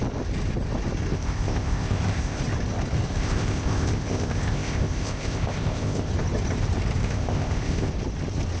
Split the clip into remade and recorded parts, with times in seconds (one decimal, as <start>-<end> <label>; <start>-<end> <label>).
0.0-1.1 recorded; 1.1-2.4 remade; 2.4-3.1 recorded; 3.1-6.1 remade; 6.1-7.0 recorded; 7.0-7.9 remade; 7.9-8.6 recorded